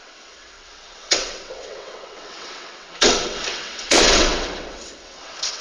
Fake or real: fake